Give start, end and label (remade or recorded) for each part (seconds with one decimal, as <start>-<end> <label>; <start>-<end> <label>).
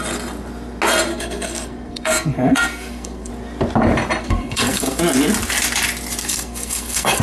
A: 0.0-1.1 recorded; 1.1-3.3 remade; 3.3-4.2 recorded; 4.2-5.0 remade; 5.0-6.2 recorded; 6.2-7.2 remade